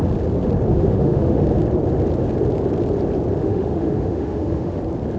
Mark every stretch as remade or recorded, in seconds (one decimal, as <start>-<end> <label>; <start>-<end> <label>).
0.0-0.7 recorded; 0.7-1.4 remade; 1.4-3.4 recorded; 3.4-4.8 remade; 4.8-5.2 recorded